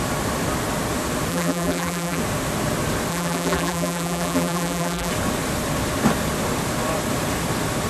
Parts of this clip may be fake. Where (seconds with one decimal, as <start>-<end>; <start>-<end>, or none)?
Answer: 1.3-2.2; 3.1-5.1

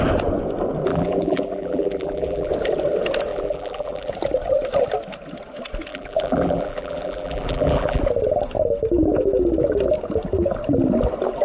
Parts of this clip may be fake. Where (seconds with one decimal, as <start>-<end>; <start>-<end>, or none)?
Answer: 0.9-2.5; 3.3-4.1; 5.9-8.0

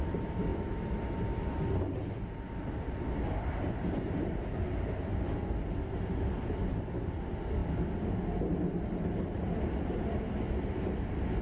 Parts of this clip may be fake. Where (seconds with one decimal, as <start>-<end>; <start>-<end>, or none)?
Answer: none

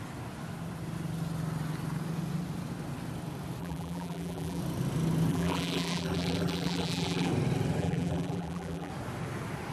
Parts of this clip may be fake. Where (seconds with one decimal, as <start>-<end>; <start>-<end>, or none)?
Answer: 3.6-4.6; 5.3-7.3; 7.8-8.9

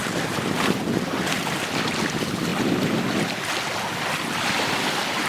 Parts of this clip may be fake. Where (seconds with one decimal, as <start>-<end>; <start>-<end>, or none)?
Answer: 0.0-2.5; 4.5-5.3

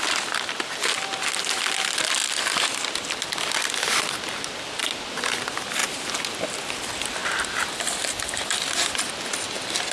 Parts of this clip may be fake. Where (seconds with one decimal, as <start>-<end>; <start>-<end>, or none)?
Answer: 7.2-9.2

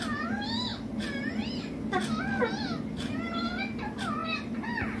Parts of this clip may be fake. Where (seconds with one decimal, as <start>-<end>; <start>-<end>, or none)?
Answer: none